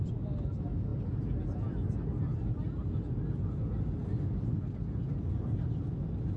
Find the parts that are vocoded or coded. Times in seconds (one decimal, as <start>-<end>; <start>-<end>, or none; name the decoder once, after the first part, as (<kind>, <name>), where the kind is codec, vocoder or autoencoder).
none